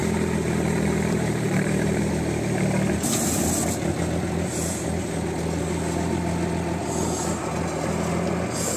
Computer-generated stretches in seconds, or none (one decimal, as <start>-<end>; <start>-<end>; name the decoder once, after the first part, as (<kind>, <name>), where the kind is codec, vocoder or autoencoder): 0.0-2.1 (vocoder, BigVGAN v2)